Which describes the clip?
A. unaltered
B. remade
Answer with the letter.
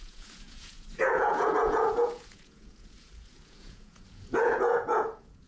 B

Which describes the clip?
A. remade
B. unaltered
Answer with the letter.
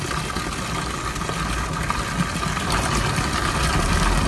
B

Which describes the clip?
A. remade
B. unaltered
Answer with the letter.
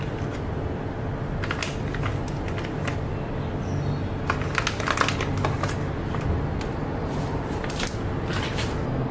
B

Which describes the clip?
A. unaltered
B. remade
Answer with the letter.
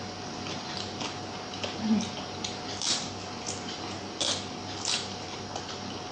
A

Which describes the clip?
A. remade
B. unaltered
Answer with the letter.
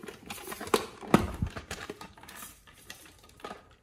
A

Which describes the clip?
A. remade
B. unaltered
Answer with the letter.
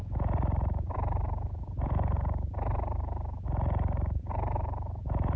A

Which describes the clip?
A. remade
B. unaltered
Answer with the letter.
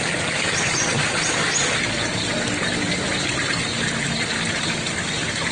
B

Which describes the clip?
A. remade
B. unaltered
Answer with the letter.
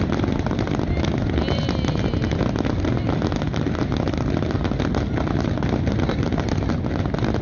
B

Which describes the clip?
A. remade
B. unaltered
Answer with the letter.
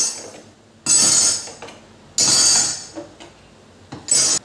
B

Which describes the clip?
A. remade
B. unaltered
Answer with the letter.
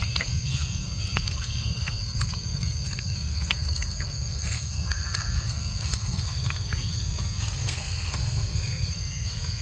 A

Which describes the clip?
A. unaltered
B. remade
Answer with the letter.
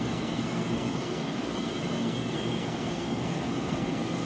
B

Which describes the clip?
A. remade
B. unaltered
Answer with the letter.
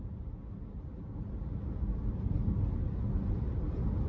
B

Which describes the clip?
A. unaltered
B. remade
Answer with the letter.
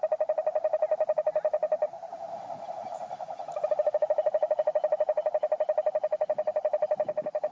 A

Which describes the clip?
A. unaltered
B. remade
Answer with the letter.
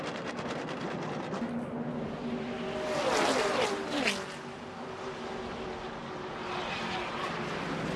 A